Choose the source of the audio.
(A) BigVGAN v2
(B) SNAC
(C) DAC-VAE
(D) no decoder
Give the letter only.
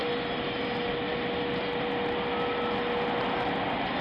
D